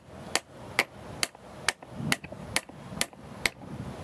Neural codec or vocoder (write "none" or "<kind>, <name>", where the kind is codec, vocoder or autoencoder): none